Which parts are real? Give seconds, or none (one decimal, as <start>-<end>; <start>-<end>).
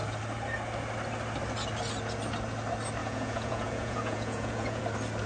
0.0-3.0; 4.8-5.3